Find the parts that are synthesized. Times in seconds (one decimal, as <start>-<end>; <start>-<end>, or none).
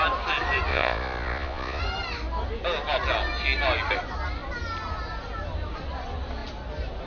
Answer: 0.7-1.8